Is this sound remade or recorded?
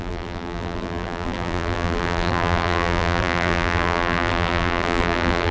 remade